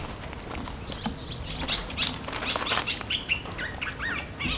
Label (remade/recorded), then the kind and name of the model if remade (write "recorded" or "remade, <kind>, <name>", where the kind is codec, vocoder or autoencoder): recorded